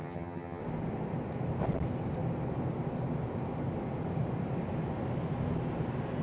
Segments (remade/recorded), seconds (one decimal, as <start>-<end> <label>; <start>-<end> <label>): 0.0-0.6 remade; 0.6-6.2 recorded